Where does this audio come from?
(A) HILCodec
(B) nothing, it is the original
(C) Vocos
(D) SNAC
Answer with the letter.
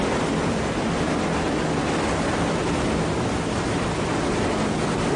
B